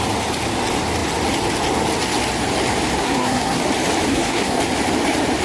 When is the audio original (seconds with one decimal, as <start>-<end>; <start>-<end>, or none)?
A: 0.0-3.0; 3.6-4.1; 4.6-5.4